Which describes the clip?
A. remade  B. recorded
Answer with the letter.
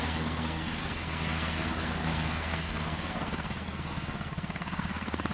A